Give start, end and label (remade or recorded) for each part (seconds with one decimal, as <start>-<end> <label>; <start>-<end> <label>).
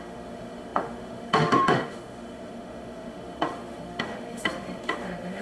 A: 0.0-5.4 remade